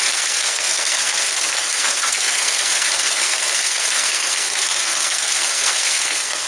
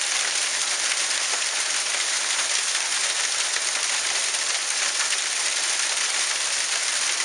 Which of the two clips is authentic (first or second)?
second